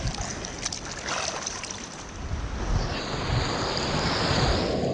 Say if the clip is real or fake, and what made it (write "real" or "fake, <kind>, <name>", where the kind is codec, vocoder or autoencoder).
real